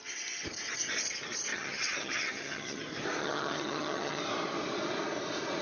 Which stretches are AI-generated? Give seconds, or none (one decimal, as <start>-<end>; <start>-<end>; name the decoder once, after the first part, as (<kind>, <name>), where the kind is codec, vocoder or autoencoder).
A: 1.5-2.8 (vocoder, HiFi-GAN); 3.2-4.2